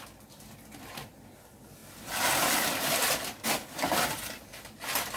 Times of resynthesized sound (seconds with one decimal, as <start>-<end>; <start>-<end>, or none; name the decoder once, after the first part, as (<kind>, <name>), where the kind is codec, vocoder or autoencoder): none